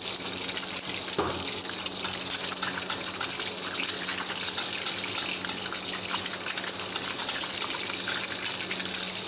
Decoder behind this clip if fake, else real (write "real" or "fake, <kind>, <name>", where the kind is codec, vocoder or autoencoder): real